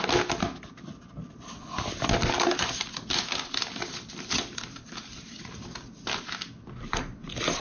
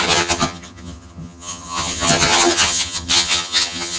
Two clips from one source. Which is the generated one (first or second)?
second